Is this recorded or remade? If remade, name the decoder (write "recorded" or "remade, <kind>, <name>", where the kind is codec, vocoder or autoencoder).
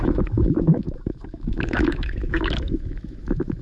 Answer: remade, autoencoder, DAC-VAE